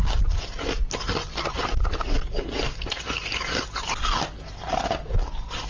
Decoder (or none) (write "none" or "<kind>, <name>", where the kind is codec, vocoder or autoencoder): none